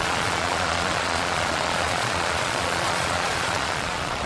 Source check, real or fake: fake